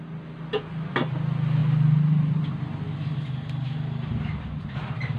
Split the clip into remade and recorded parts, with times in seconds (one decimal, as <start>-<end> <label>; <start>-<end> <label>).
0.0-5.2 recorded